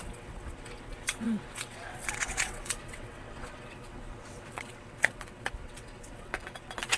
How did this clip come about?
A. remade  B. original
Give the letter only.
A